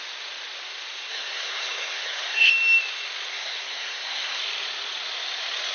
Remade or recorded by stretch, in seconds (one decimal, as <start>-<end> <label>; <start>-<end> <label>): 0.0-1.1 recorded; 1.1-2.5 remade; 2.5-3.3 recorded; 3.3-4.4 remade; 4.4-5.7 recorded